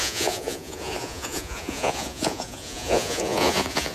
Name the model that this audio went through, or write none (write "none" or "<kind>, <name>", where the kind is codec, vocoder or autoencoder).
vocoder, Vocos